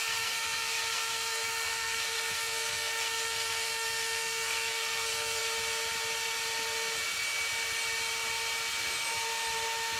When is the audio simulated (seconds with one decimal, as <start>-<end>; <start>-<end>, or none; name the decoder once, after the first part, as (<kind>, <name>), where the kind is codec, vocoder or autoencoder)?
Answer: 0.0-5.4 (codec, SNAC)